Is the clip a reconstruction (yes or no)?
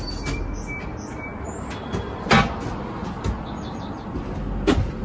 no